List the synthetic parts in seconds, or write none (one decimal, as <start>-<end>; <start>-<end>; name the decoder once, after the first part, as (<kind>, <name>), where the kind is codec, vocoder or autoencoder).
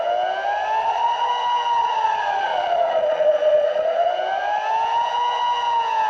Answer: 0.8-1.3 (vocoder, Vocos); 1.8-4.1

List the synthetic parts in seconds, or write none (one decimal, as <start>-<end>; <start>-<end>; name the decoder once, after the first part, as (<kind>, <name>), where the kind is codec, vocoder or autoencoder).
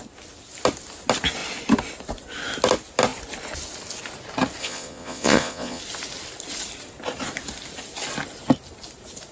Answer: 4.6-5.8 (vocoder, Vocos)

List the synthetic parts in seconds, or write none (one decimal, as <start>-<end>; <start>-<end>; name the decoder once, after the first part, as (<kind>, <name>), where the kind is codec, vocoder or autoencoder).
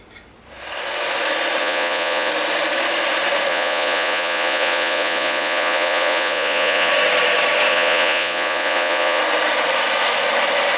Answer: 1.6-2.3 (vocoder, Vocos); 3.5-6.9; 7.7-9.2